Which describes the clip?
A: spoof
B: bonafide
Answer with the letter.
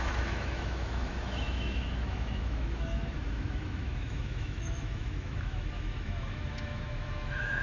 A